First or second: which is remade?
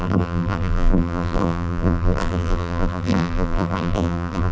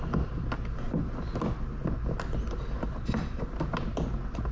first